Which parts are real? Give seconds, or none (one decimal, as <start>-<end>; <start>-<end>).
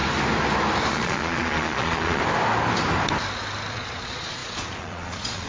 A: 0.0-0.9; 2.2-3.7